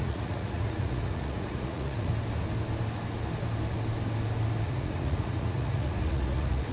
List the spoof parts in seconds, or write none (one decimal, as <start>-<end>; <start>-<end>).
0.0-2.1; 4.6-6.7